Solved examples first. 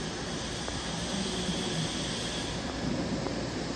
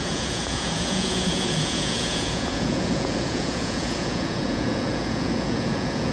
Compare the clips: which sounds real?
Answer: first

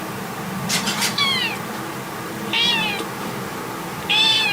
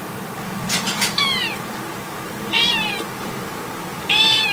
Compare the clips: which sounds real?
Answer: first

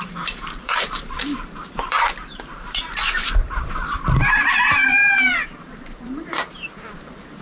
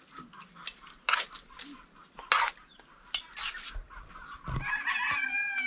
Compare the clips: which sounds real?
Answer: second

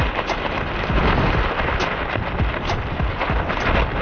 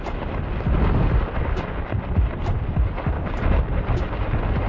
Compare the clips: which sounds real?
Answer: first